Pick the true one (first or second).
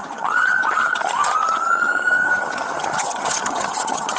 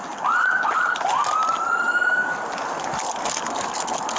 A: second